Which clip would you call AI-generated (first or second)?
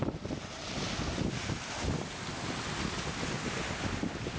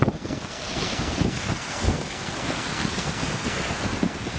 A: second